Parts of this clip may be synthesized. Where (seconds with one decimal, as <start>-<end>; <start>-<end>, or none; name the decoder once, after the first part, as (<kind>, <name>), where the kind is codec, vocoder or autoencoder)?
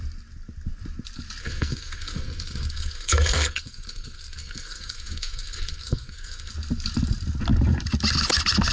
1.4-6.5 (codec, SNAC)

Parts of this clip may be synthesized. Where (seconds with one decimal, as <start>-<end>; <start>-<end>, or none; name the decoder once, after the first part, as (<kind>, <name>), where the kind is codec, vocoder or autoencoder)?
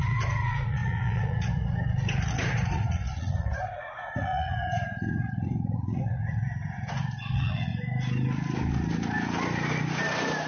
0.0-7.7 (vocoder, Vocos)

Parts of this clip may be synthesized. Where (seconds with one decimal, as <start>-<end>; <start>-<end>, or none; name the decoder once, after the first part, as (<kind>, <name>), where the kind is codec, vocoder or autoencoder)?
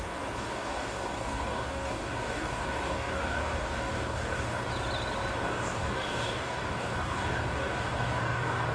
0.0-4.7 (codec, DAC); 5.3-8.7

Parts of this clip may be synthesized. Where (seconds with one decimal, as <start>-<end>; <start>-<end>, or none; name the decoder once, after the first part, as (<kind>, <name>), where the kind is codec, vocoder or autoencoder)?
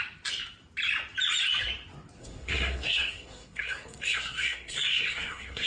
2.2-5.7 (codec, SNAC)